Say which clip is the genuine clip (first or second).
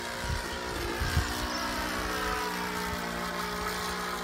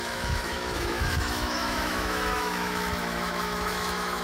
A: first